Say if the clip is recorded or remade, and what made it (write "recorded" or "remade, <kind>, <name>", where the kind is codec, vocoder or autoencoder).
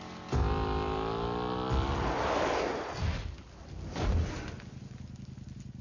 recorded